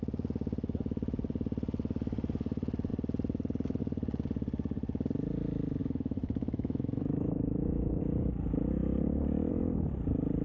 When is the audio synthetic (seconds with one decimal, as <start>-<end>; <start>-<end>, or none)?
5.8-8.0